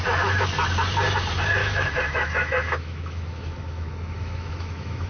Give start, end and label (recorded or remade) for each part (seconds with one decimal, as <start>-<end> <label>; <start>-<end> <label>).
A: 0.0-1.6 recorded; 1.6-5.1 remade